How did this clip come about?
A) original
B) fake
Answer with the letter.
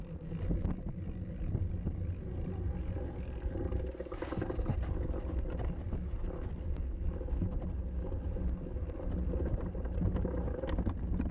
A